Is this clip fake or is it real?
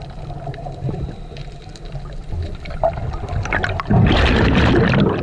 real